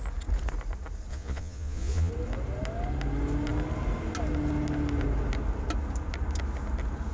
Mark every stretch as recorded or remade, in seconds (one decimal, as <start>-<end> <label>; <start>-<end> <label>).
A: 0.0-1.1 recorded; 1.1-2.1 remade; 2.1-7.1 recorded